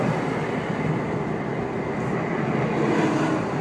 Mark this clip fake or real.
real